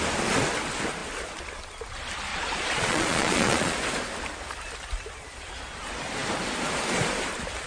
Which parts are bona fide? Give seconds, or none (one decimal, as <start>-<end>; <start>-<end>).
0.0-2.3; 3.8-7.7

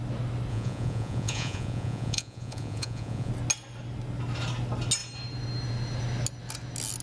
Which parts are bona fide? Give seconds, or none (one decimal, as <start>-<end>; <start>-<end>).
0.0-0.5; 3.3-7.0

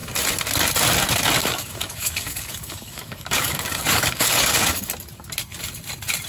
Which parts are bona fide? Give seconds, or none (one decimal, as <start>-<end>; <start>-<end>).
0.0-1.4; 4.9-6.3